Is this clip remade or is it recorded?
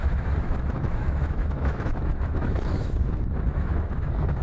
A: remade